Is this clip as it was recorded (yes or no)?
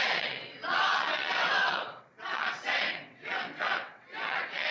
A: no